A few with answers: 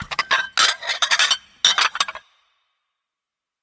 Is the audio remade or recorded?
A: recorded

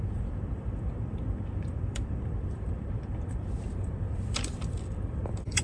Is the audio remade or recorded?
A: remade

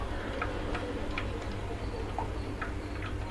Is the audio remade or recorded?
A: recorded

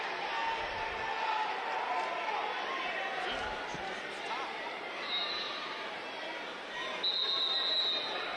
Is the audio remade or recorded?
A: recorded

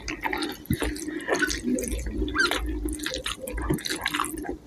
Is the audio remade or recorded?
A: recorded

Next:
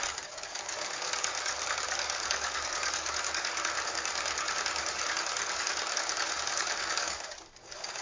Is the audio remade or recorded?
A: remade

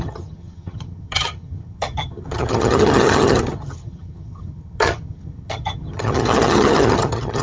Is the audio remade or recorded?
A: remade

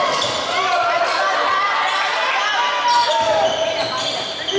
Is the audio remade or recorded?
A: recorded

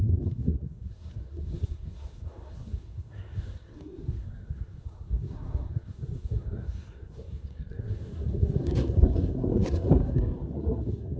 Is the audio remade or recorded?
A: remade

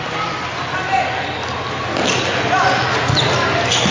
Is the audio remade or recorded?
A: recorded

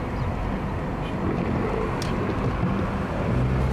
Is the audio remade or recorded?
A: recorded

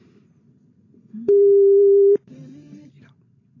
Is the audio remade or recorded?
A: remade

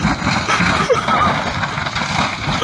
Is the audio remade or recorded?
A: recorded